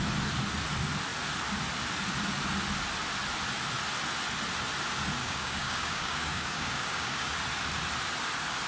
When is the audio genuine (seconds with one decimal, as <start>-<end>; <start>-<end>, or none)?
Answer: 0.0-5.2; 7.3-8.7